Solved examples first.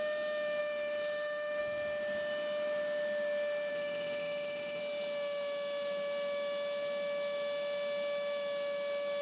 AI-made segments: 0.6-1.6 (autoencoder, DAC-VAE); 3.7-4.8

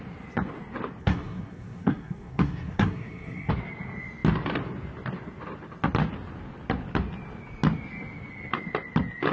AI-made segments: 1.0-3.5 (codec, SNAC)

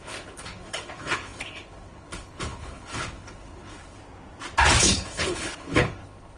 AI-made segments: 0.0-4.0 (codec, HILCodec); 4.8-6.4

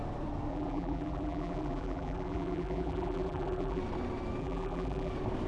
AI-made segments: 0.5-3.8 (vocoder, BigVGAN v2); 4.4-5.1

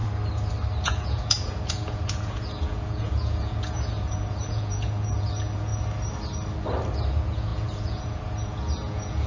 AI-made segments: 0.8-5.7 (vocoder, Vocos); 7.1-9.3

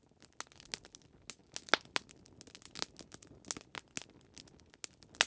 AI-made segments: none